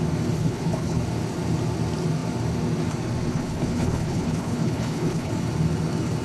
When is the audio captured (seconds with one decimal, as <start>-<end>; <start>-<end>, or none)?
0.0-0.4; 1.0-3.3; 5.3-6.2